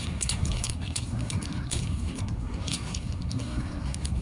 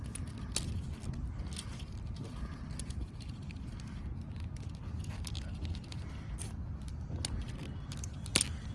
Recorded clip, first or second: second